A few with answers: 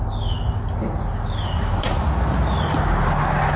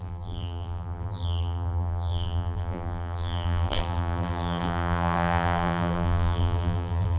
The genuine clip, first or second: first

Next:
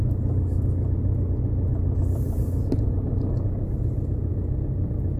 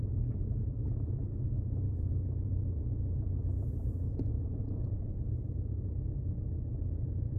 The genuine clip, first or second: first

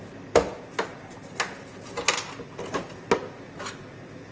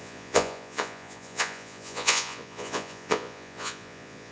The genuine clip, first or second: first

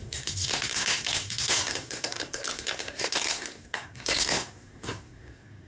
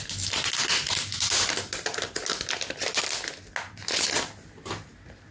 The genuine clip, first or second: second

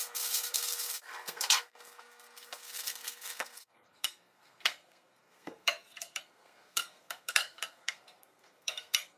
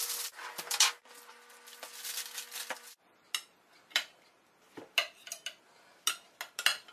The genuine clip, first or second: second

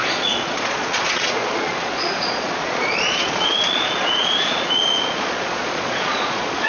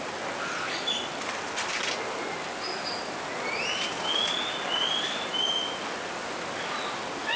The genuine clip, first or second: second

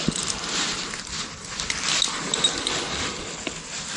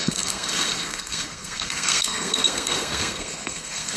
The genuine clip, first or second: first